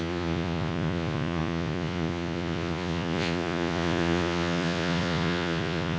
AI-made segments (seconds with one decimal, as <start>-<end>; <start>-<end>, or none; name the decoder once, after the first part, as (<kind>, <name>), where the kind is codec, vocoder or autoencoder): 0.0-6.0 (vocoder, Vocos)